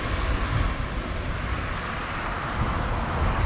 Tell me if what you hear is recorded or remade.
recorded